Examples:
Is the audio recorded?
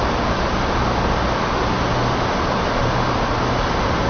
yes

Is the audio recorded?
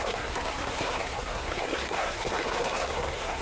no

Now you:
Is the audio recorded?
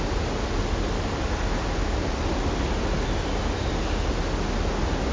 yes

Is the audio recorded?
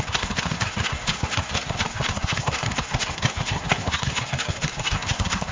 no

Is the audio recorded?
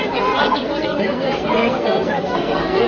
no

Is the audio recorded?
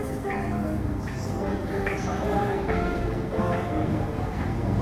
no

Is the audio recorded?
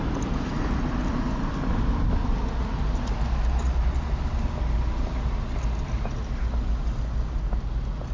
yes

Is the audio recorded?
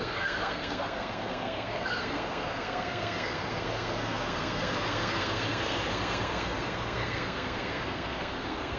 no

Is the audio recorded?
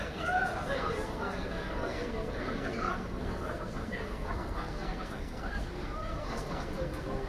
no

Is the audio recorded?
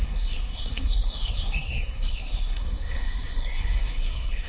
no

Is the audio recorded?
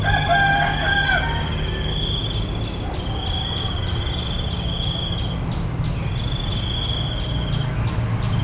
yes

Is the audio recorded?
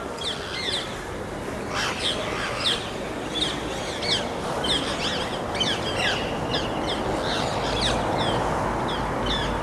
yes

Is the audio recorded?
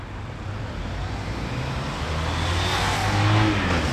yes